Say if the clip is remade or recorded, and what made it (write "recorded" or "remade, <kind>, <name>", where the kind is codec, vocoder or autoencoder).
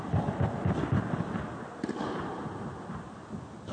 recorded